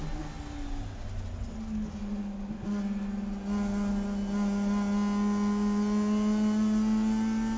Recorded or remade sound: recorded